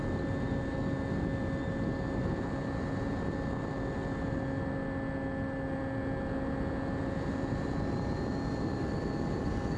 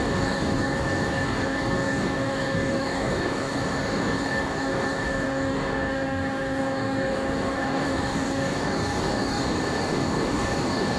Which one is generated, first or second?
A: second